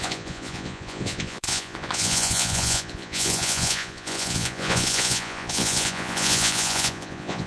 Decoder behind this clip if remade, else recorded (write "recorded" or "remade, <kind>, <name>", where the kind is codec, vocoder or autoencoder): remade, vocoder, Vocos